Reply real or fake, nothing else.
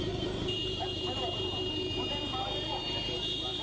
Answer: fake